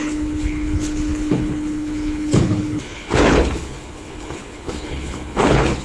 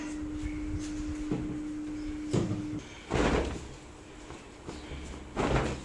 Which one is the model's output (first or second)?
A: first